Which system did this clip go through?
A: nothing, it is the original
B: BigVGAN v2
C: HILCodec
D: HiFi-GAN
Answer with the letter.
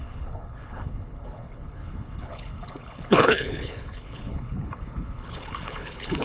C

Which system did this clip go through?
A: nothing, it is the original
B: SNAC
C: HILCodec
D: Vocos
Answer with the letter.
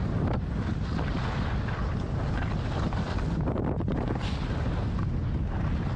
A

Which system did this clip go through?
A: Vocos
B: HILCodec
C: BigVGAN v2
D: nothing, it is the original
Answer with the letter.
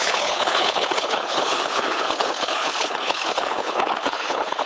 B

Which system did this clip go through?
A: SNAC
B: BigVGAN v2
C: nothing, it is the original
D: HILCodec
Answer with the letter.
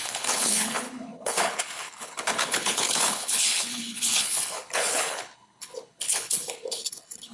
D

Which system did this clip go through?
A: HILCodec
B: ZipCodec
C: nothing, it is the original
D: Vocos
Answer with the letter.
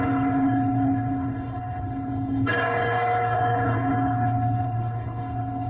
A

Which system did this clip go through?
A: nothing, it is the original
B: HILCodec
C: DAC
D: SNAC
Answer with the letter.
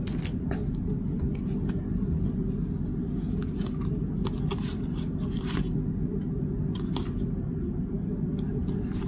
A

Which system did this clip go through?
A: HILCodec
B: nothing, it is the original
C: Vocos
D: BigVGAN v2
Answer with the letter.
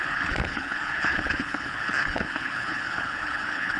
A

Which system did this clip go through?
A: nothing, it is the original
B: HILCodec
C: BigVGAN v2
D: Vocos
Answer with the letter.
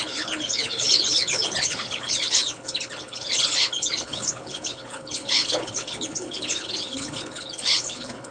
B